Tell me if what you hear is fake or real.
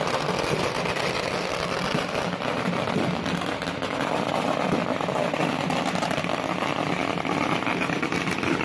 real